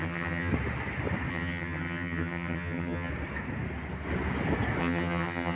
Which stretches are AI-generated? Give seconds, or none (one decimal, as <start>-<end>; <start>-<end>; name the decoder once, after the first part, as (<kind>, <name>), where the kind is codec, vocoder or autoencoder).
0.0-0.5 (vocoder, HiFi-GAN); 1.3-3.1; 4.8-5.5